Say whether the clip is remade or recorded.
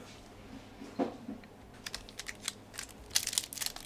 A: recorded